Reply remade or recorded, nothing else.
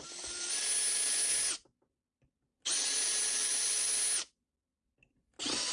recorded